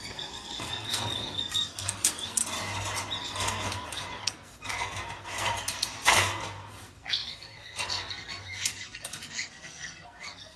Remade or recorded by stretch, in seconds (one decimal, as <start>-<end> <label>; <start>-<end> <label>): 0.0-2.4 remade; 2.4-3.2 recorded; 3.2-10.6 remade